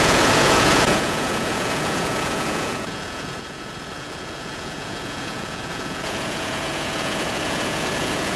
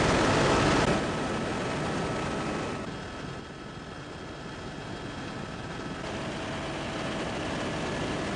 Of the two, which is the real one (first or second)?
second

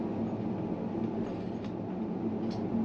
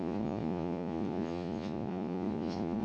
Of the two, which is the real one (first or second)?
first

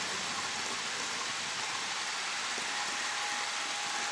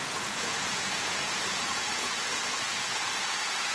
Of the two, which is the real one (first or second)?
first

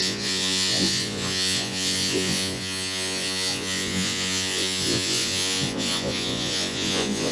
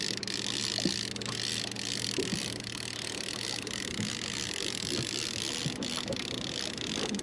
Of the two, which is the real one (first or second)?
second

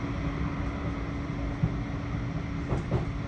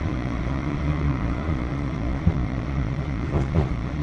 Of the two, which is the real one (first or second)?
first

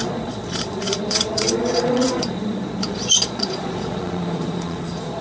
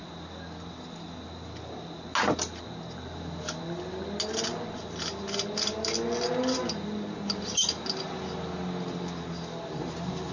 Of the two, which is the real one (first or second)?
second